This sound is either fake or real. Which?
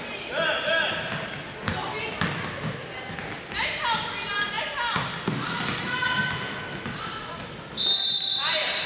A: real